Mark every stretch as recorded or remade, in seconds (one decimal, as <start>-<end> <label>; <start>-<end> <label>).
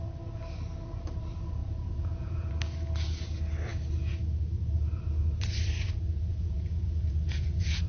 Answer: 0.0-1.6 recorded; 1.6-2.5 remade; 2.5-6.3 recorded; 6.3-7.9 remade